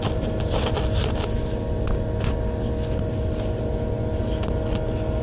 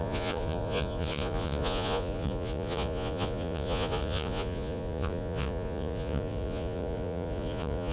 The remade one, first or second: second